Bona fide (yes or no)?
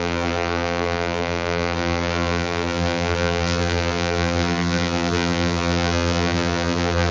no